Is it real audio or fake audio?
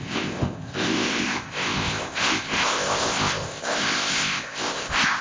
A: fake